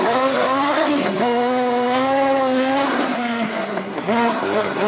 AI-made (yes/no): yes